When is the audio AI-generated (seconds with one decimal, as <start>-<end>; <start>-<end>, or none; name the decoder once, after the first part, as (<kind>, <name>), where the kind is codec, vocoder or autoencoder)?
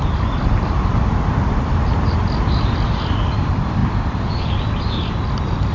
none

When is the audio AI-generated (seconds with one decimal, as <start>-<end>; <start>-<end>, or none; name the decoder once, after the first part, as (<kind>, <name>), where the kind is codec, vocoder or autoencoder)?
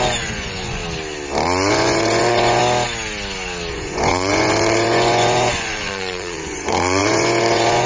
0.0-0.8 (vocoder, Vocos); 1.7-2.6; 3.7-7.9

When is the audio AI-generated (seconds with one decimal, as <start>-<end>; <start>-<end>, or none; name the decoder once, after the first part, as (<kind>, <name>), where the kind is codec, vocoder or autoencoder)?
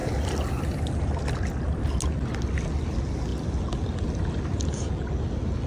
none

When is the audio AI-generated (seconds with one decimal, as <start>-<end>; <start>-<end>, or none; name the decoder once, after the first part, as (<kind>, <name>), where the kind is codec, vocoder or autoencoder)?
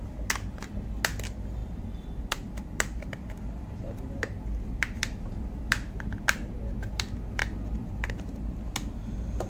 1.6-5.7 (vocoder, BigVGAN v2); 7.4-8.1